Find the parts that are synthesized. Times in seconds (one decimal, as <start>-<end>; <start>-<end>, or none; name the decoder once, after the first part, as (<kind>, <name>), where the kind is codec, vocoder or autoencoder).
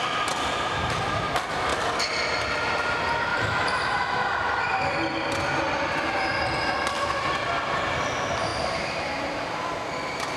3.3-4.0 (vocoder, BigVGAN v2); 8.5-9.7